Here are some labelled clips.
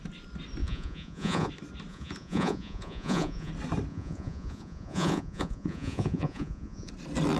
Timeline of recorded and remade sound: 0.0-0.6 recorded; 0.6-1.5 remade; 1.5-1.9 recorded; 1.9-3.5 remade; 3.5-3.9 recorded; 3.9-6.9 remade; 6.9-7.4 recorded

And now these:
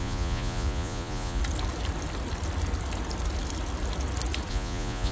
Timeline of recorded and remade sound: 0.0-1.4 remade; 1.4-4.5 recorded; 4.5-5.1 remade

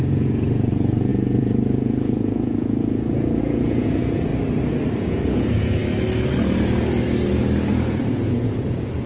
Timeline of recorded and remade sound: 0.0-4.3 remade; 4.3-5.0 recorded; 5.0-5.8 remade; 5.8-7.7 recorded; 7.7-9.1 remade

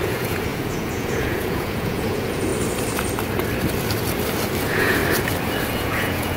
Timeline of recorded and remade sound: 0.0-2.5 remade; 2.5-4.6 recorded; 4.6-5.0 remade; 5.0-5.7 recorded; 5.7-6.4 remade

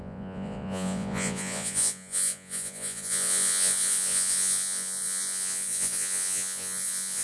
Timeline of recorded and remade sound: 0.0-7.2 remade

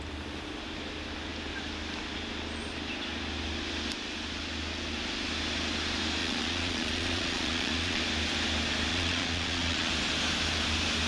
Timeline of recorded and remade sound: 0.0-6.2 recorded; 6.2-8.0 remade; 8.0-8.9 recorded; 8.9-9.9 remade; 9.9-11.1 recorded